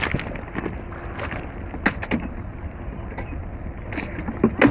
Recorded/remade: recorded